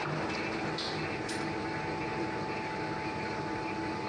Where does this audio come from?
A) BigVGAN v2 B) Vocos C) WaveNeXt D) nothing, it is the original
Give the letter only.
D